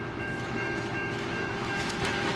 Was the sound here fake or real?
fake